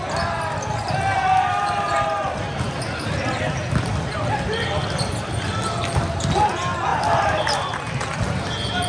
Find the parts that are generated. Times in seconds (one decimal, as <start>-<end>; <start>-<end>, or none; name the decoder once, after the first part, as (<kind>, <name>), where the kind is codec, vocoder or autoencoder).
none